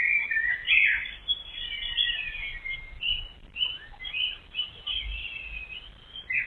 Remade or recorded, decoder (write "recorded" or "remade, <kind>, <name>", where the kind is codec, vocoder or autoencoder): recorded